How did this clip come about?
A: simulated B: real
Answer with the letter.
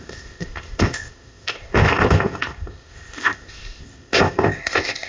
A